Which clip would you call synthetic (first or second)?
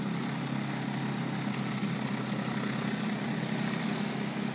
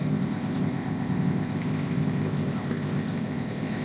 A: second